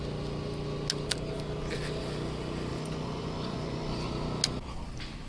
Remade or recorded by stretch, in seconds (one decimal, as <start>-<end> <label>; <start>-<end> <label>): 0.0-2.7 recorded; 2.7-4.1 remade; 4.1-5.3 recorded